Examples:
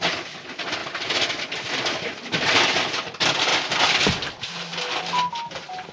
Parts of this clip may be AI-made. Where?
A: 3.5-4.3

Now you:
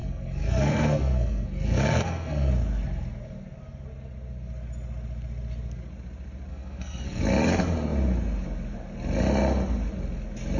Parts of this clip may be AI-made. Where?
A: 0.0-2.5; 6.5-7.2

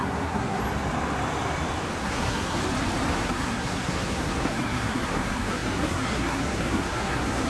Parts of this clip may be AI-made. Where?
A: 0.0-0.6; 2.0-2.6; 3.1-7.5

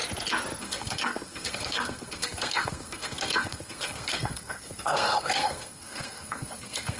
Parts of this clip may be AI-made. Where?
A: 0.6-7.0

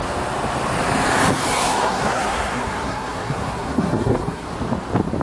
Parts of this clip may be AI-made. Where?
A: 1.6-4.5

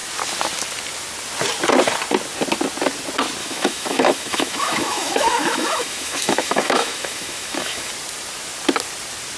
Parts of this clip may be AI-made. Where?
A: 3.4-7.9